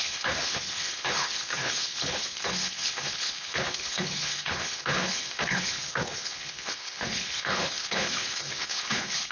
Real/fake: fake